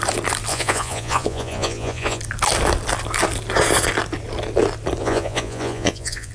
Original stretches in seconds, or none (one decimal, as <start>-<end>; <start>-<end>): 0.0-0.5; 2.2-5.0